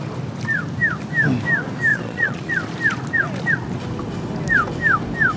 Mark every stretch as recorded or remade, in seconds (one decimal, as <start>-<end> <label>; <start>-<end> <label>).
0.0-1.9 recorded; 1.9-2.5 remade; 2.5-5.4 recorded